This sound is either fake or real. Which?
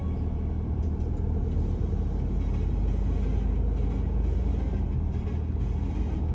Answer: real